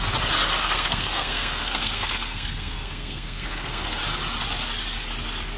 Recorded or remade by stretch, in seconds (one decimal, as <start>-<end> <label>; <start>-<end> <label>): 0.0-0.6 recorded; 0.6-4.0 remade; 4.0-5.6 recorded